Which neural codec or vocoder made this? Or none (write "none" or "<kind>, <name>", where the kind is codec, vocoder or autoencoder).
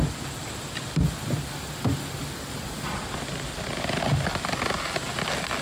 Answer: none